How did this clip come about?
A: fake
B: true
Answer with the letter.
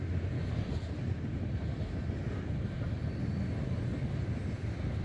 B